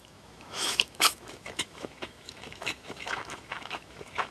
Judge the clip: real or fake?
fake